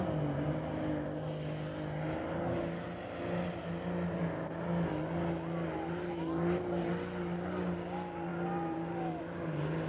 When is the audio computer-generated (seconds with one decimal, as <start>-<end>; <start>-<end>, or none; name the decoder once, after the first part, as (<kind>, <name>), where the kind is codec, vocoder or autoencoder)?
none